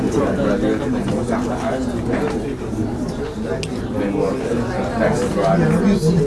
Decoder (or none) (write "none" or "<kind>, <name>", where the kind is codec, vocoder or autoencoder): none